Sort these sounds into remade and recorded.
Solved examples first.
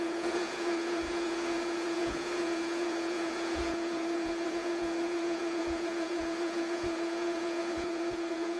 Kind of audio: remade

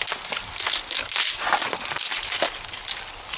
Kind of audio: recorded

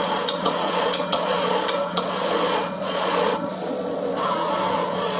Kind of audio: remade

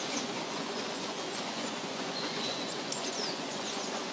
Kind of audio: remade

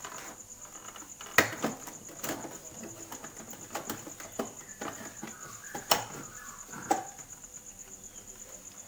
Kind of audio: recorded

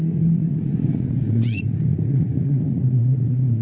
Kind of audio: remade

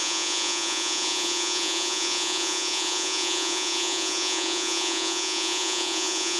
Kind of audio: remade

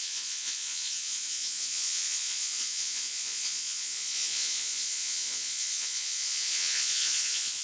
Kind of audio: remade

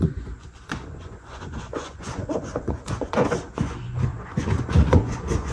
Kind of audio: remade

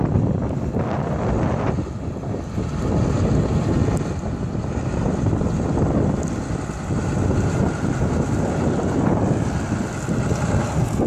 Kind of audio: recorded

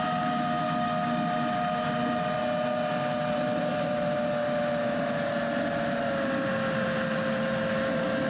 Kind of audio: recorded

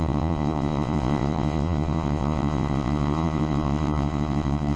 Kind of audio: remade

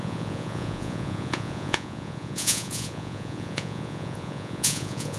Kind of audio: remade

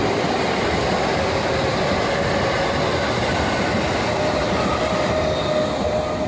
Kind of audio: recorded